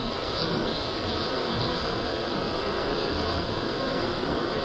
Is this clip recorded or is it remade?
remade